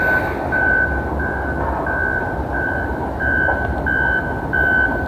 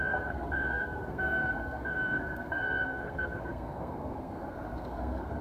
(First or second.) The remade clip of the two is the second